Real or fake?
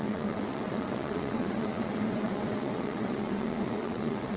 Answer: fake